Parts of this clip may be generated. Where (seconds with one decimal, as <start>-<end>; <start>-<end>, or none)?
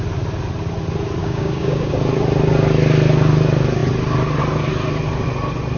1.2-1.9